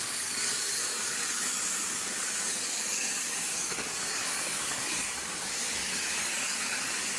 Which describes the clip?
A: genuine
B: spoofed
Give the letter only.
B